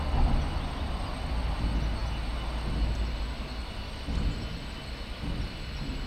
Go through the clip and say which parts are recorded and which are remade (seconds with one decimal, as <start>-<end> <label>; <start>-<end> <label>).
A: 0.0-6.1 recorded